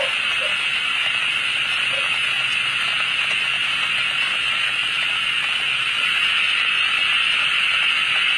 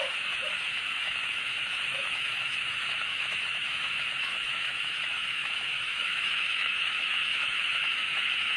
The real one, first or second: first